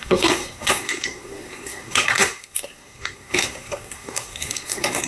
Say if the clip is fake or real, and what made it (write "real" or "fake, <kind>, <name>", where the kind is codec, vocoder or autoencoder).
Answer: fake, codec, SNAC